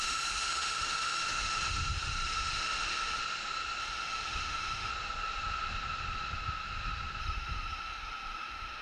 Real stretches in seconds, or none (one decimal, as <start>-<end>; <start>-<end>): 3.2-3.8; 4.9-7.2